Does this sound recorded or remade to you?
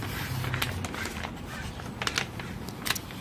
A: recorded